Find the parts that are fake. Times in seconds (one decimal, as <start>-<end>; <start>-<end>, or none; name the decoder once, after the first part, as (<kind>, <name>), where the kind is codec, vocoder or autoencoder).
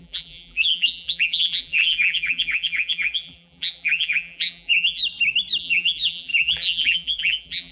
0.0-5.0 (vocoder, BigVGAN v2); 5.6-7.7